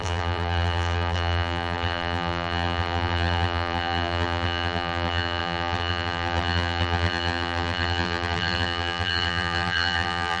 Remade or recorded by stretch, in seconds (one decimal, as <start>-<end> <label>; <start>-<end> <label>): 0.0-10.4 remade

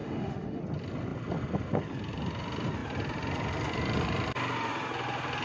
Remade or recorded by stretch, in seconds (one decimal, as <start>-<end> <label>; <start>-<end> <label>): 0.0-0.6 remade; 0.6-5.4 recorded

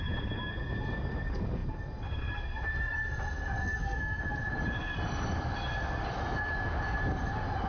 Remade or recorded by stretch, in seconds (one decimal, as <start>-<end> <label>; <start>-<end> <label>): 0.0-3.6 recorded; 3.6-4.2 remade; 4.2-7.7 recorded